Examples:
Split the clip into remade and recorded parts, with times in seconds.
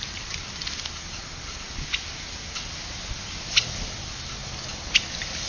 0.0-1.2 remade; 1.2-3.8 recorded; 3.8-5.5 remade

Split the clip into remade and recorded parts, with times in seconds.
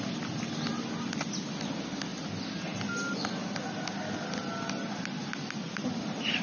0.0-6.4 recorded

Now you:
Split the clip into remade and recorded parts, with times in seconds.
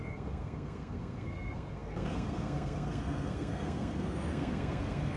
0.0-5.2 remade